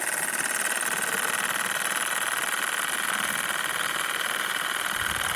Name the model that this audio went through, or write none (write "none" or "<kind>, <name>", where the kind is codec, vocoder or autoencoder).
none